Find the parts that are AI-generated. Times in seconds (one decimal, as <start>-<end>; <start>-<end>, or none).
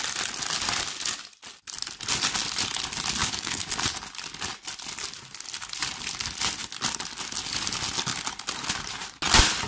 3.2-3.7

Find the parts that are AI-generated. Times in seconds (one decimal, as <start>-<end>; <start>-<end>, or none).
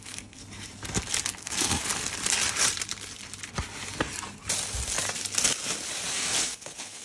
0.0-0.4; 1.4-1.9; 6.1-7.0